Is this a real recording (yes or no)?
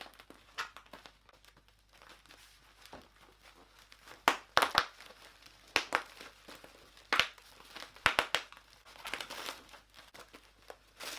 yes